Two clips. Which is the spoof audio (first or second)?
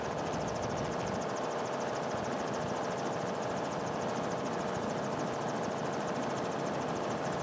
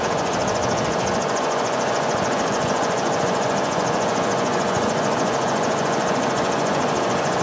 second